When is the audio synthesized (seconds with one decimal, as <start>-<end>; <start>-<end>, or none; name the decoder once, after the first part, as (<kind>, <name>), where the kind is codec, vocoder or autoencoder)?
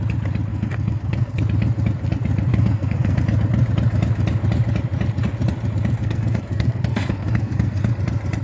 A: 0.5-1.4 (codec, SNAC); 2.5-3.2; 6.0-7.9